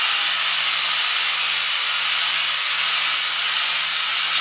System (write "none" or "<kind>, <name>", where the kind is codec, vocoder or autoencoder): none